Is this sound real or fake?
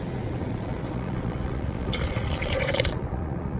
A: fake